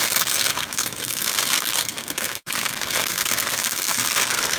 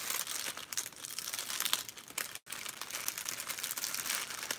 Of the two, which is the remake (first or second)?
first